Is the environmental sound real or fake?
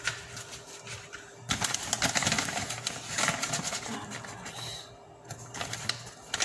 real